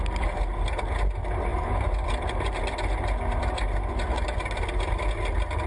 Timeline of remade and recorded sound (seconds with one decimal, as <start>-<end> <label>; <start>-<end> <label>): 0.0-5.7 recorded